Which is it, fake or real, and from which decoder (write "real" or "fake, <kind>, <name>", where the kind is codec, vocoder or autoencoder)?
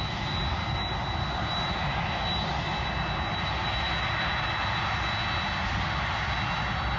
real